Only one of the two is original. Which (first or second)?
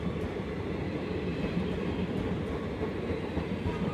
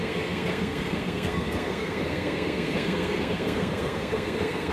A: first